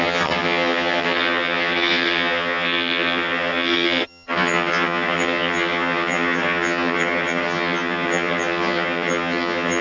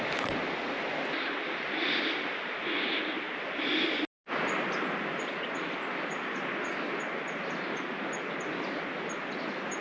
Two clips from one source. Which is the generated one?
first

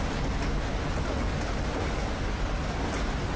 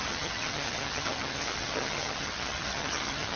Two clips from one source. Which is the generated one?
second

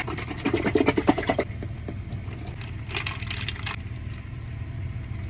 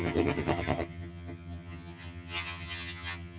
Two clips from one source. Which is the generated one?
second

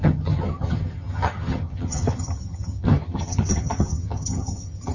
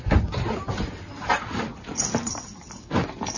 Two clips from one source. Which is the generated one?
first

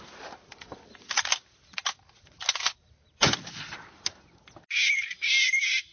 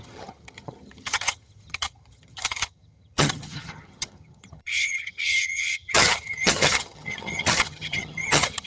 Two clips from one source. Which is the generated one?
second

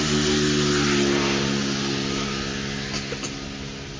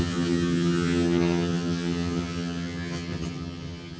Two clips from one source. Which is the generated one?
second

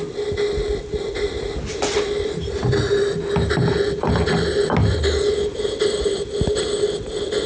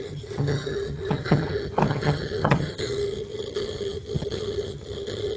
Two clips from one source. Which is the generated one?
second